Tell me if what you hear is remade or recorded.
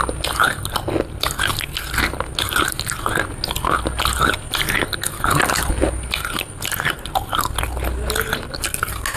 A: recorded